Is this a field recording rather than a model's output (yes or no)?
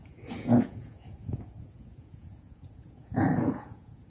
no